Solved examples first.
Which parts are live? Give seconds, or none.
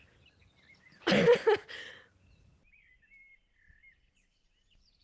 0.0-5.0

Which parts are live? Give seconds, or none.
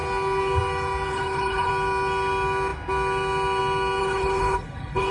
0.0-1.1; 1.7-4.0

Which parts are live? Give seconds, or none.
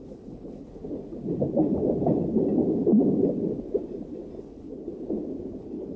0.8-4.4; 4.9-5.6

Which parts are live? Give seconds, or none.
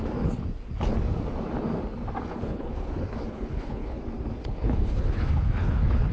0.0-2.3; 4.0-4.4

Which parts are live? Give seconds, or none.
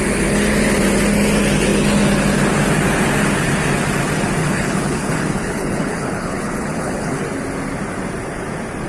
0.0-4.4; 7.2-8.9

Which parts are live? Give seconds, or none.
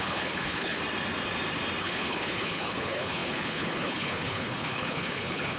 0.8-1.8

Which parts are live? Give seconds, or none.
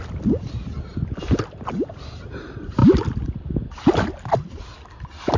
0.0-5.4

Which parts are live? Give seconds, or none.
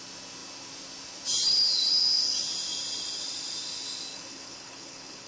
0.0-4.1